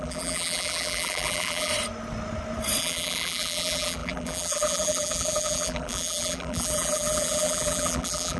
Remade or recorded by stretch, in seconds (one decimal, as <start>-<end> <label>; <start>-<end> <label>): 0.0-1.7 remade; 1.7-2.8 recorded; 2.8-8.4 remade